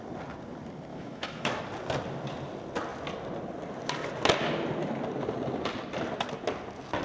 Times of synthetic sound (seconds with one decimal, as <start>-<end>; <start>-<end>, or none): 0.9-1.6